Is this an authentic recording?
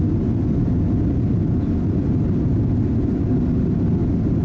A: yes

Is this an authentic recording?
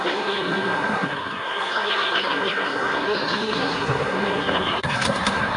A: no